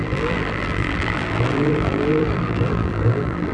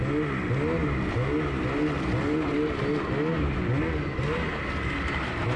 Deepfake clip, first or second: first